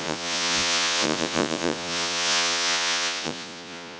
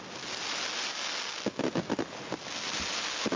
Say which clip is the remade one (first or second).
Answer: first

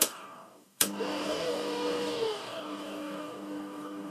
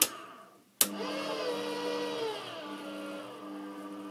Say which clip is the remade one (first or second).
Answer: first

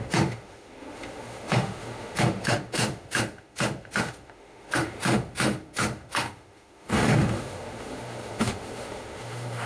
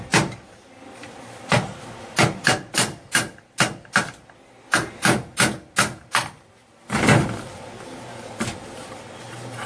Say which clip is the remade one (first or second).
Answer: first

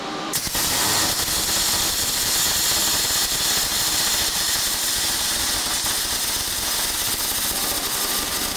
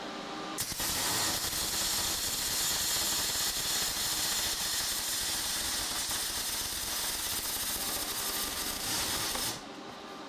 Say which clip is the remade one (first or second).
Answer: first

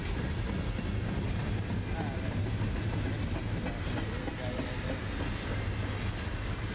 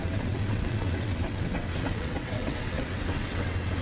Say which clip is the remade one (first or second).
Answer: second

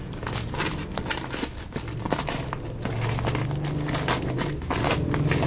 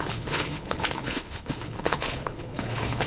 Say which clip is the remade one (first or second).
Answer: second